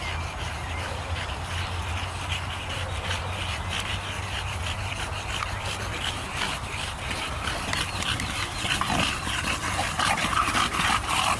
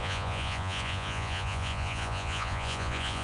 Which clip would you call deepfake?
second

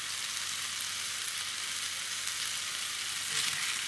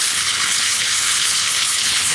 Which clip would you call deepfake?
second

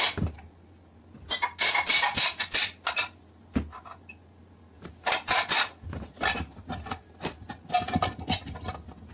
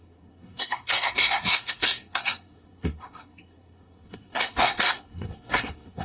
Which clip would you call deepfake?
second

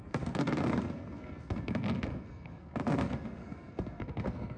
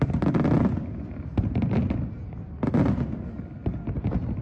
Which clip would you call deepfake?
first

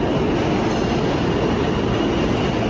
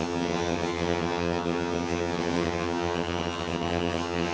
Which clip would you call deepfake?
second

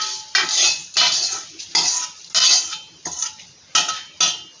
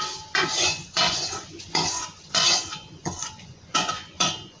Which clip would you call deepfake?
second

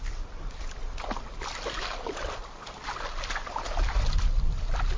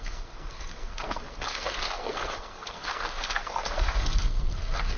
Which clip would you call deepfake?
second